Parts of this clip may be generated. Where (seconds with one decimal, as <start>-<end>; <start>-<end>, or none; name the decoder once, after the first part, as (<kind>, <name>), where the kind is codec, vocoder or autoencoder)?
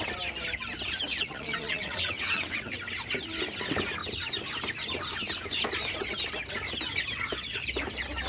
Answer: 1.1-2.7 (vocoder, WaveNeXt)